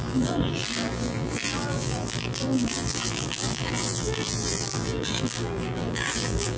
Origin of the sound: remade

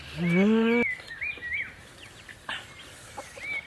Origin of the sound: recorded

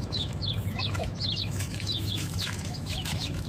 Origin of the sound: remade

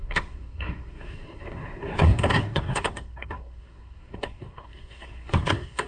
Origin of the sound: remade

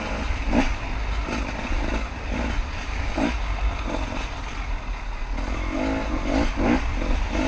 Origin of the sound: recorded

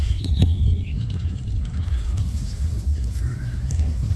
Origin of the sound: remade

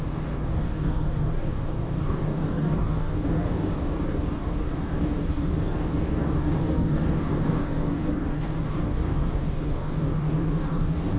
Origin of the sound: remade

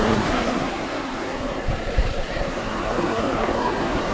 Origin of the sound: remade